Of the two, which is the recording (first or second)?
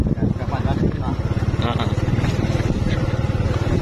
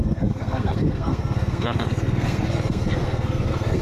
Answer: first